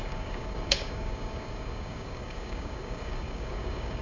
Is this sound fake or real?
fake